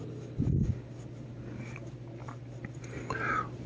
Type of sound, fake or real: real